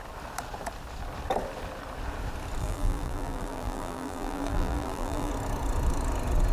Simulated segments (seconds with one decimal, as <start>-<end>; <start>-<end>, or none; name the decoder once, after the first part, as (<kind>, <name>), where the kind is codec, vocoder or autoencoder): 2.6-5.3 (vocoder, BigVGAN v2)